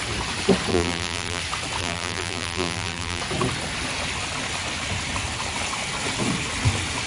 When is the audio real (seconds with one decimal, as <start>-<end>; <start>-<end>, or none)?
0.0-0.7; 1.4-1.8; 3.2-7.1